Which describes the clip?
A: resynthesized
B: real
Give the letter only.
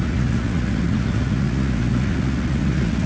A